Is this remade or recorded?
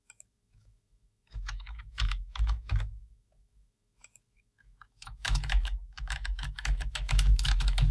remade